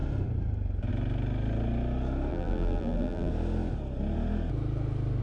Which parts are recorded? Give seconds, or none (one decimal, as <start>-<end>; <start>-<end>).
0.0-2.3; 3.3-5.2

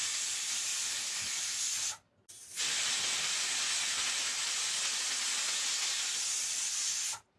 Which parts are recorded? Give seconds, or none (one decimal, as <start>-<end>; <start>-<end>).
0.0-7.4